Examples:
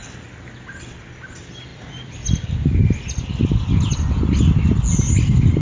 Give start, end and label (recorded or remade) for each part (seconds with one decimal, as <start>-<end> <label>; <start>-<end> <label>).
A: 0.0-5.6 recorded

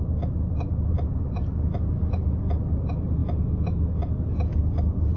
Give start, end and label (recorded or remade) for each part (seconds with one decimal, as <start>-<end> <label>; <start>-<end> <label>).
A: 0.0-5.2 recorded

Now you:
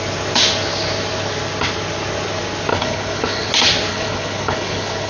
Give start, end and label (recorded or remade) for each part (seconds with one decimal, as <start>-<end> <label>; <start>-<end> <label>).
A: 0.0-2.7 recorded; 2.7-3.5 remade; 3.5-3.9 recorded; 3.9-5.1 remade

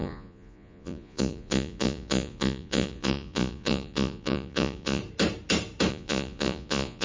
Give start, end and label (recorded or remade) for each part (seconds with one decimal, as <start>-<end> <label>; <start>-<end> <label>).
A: 0.0-5.0 remade; 5.0-5.9 recorded; 5.9-7.0 remade

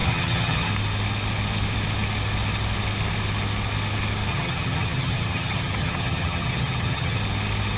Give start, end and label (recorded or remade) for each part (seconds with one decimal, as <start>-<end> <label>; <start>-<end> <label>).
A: 0.0-0.7 remade; 0.7-4.3 recorded; 4.3-7.2 remade; 7.2-7.8 recorded

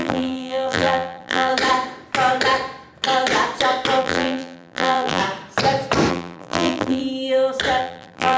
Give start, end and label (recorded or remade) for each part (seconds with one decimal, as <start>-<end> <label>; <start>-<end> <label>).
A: 0.0-1.5 remade; 1.5-4.0 recorded; 4.0-5.2 remade; 5.2-6.1 recorded; 6.1-7.0 remade; 7.0-7.8 recorded; 7.8-8.4 remade